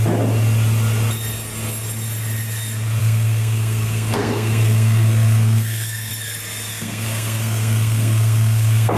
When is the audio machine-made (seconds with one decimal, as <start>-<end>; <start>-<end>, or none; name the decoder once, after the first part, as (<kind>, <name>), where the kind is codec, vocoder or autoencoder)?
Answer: 3.0-6.1 (codec, SNAC); 6.7-9.0